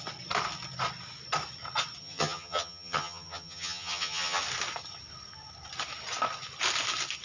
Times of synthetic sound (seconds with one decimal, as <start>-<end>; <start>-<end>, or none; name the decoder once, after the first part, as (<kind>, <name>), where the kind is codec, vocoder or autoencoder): 2.0-4.4 (vocoder, HiFi-GAN)